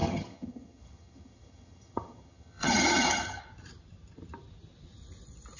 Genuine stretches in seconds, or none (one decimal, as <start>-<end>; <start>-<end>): 3.4-5.6